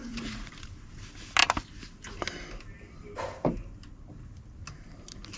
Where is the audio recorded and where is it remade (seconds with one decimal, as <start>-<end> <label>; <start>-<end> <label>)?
0.0-0.5 remade; 0.5-5.4 recorded